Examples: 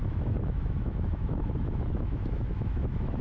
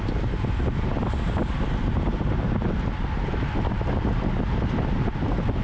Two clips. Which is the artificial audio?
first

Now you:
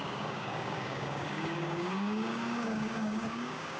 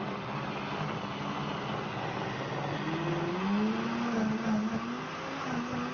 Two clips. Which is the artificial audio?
first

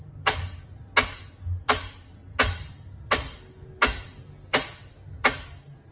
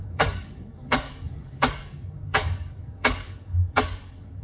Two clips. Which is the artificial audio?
second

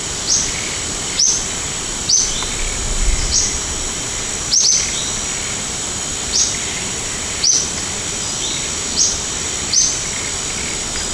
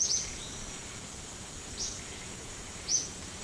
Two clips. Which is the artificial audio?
second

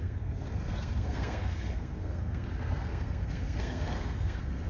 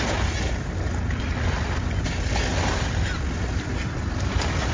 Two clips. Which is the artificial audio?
first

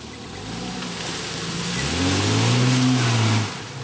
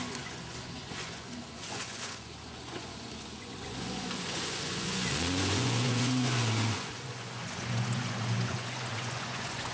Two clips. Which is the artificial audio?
second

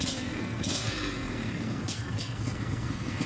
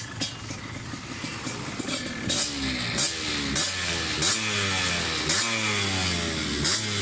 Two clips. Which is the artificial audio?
first